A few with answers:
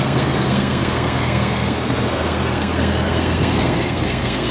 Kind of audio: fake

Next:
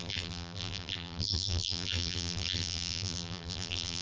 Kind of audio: fake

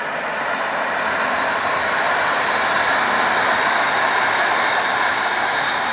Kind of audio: real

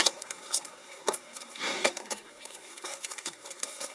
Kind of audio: fake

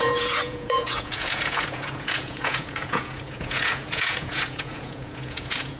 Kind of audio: fake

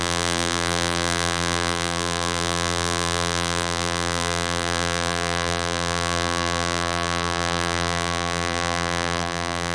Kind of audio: fake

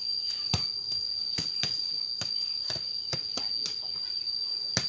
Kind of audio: real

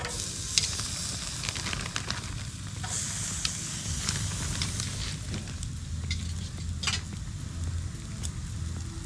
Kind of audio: real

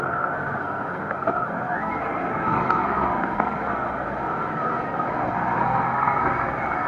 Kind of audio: fake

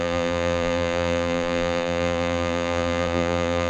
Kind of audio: fake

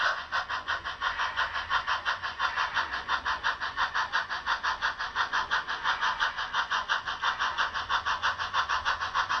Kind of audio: fake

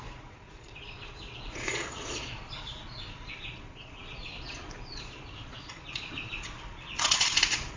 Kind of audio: fake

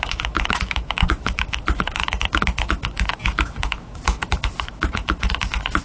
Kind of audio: fake